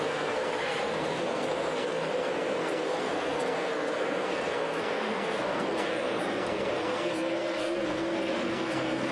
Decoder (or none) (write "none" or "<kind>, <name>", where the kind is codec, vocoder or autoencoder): codec, SNAC